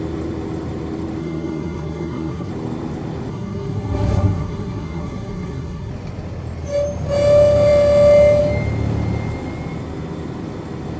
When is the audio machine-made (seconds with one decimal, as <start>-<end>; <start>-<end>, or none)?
1.2-2.5; 3.3-5.9